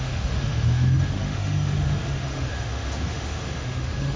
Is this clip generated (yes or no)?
yes